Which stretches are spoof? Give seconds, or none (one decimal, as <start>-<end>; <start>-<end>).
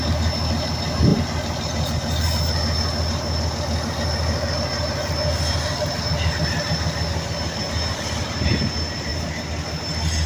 none